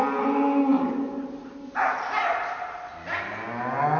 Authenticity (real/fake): real